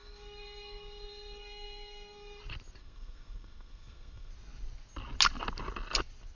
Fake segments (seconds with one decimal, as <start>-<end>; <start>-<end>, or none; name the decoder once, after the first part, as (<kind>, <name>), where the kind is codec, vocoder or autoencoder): 0.0-2.4 (codec, SNAC); 2.8-4.3